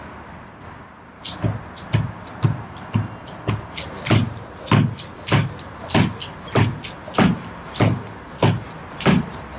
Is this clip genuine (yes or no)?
yes